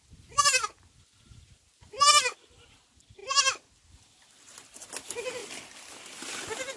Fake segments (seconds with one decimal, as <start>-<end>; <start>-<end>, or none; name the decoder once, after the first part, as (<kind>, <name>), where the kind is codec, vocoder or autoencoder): none